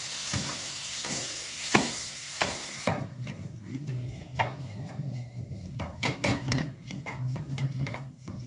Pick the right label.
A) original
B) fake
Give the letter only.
B